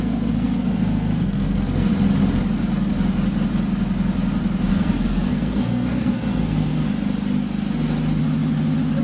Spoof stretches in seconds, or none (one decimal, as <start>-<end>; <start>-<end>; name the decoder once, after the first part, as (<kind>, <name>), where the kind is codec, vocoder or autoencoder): 0.0-1.9 (codec, SNAC); 4.7-6.8